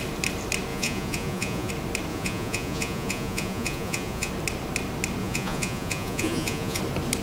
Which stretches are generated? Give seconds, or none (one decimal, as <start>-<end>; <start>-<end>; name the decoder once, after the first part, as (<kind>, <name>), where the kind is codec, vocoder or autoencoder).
0.7-1.7 (vocoder, Vocos); 2.1-4.3; 5.2-6.8